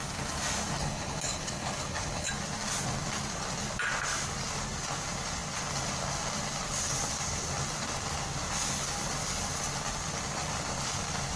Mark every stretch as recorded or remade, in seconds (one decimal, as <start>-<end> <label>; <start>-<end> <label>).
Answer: 0.0-0.8 recorded; 0.8-2.3 remade; 2.3-11.4 recorded